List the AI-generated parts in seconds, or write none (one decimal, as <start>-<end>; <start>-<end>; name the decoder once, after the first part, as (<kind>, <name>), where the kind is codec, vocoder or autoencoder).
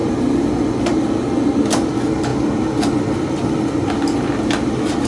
none